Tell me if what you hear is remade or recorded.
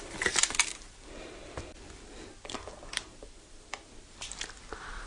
recorded